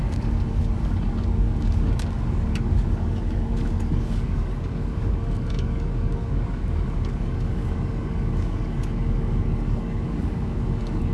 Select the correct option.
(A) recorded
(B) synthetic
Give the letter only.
B